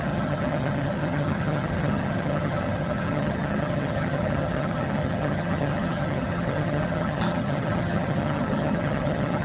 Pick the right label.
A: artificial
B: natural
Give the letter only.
A